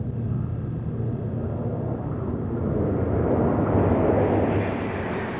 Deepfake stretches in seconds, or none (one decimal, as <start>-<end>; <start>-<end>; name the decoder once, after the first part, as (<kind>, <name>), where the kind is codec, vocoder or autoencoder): none